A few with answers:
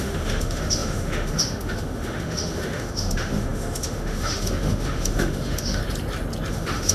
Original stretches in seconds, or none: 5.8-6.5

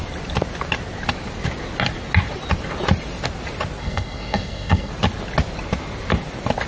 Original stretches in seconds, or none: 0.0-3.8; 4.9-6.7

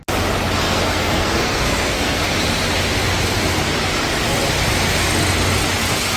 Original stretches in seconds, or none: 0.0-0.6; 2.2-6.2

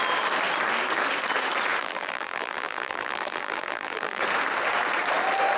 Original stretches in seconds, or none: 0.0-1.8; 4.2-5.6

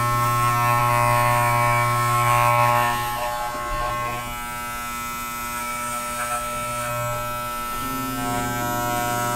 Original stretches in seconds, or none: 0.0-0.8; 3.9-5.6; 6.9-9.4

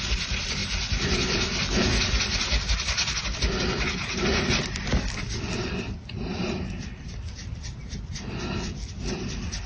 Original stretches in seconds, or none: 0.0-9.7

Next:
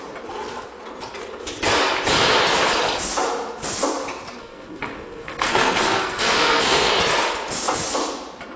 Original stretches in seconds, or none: 0.0-4.4; 6.9-8.6

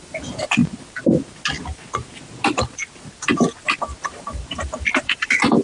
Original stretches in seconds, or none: 0.6-4.0